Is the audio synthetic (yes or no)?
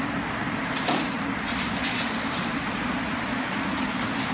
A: yes